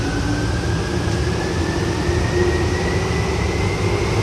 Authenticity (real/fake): real